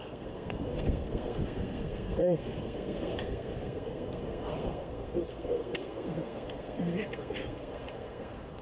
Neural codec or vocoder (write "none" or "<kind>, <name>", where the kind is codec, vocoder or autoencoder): codec, SNAC